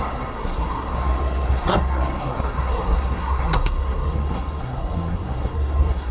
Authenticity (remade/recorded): remade